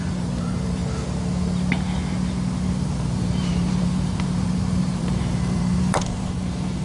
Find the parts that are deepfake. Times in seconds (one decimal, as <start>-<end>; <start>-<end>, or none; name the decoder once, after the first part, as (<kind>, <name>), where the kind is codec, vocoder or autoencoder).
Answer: 0.0-0.8 (vocoder, BigVGAN v2); 2.6-6.8